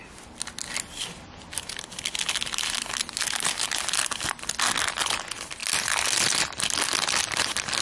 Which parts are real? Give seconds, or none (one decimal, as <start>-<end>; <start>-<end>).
0.0-7.8